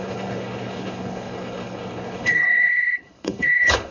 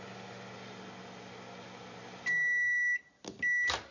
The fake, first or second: first